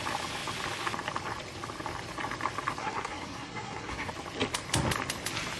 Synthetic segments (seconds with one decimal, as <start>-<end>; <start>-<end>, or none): 2.8-4.1